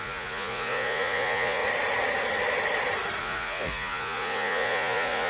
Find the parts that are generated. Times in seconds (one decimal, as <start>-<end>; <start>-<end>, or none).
0.0-1.6; 3.2-5.3

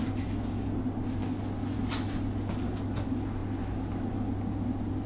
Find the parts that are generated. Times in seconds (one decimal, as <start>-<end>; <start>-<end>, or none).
none

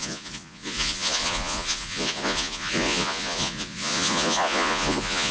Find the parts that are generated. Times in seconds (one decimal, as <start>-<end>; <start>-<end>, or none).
0.0-5.3